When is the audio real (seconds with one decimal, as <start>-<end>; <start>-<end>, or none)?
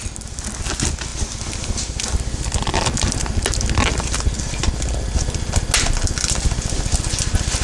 0.0-7.6